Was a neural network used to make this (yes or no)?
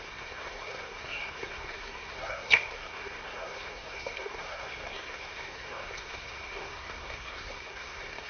yes